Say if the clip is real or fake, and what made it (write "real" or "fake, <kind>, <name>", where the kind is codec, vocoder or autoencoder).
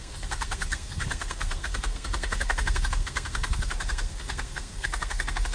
fake, codec, SNAC